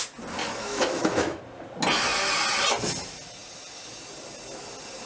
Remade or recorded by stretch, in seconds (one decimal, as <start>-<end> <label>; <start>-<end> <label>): 0.0-0.4 recorded; 0.4-1.4 remade; 1.4-5.0 recorded